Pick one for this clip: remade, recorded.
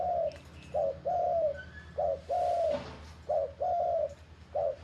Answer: recorded